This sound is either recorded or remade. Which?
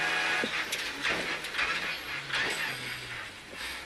recorded